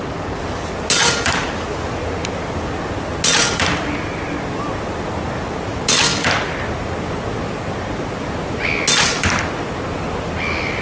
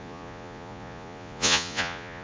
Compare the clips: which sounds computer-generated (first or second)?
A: second